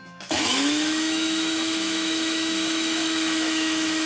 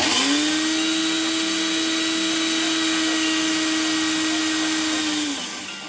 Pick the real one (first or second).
second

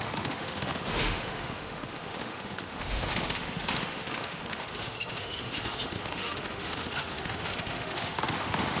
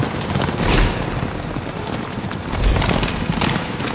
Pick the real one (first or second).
second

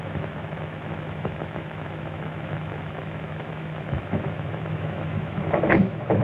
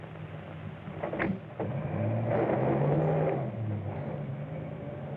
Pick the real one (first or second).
second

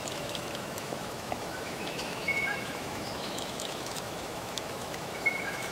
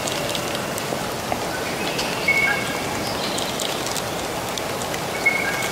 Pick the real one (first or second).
second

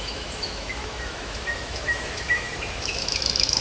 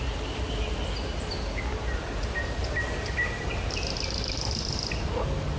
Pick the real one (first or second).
second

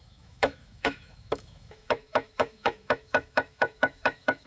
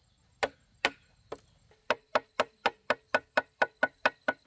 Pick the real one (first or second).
second